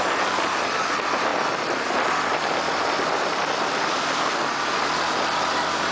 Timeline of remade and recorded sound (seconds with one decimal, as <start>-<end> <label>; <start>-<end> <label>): 0.0-1.3 remade; 1.3-2.3 recorded; 2.3-5.9 remade